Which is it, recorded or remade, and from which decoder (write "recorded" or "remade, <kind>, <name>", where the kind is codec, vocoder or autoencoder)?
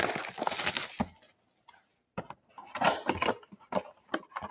recorded